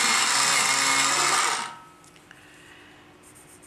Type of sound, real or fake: real